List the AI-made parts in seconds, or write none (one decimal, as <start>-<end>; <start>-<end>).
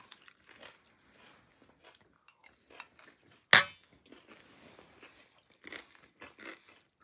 none